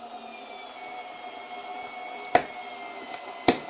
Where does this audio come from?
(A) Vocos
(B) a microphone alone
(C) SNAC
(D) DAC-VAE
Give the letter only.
B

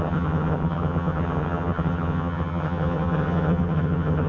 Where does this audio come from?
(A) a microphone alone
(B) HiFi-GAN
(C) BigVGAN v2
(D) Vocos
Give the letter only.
B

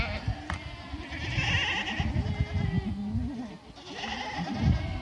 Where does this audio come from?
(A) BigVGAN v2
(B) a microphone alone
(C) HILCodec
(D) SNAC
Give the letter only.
B